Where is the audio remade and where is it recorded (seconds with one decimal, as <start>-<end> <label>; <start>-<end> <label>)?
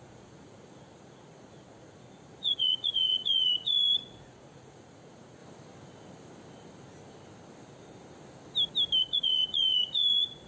0.0-5.4 remade; 5.4-9.0 recorded; 9.0-10.5 remade